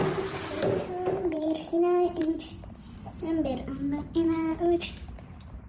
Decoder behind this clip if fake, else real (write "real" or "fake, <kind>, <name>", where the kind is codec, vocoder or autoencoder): fake, vocoder, BigVGAN v2